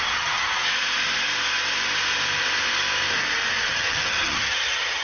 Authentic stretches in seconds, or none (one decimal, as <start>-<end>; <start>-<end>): 0.6-3.6